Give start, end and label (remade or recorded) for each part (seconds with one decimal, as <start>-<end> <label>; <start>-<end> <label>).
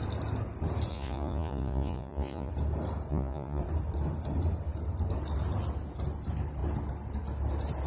0.0-0.9 recorded; 0.9-2.5 remade; 2.5-3.1 recorded; 3.1-3.6 remade; 3.6-7.9 recorded